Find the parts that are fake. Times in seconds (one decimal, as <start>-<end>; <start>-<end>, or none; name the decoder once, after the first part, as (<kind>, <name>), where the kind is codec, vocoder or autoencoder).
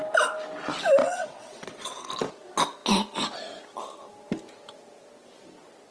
1.0-2.1 (vocoder, WaveNeXt)